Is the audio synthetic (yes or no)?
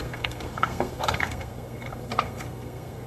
yes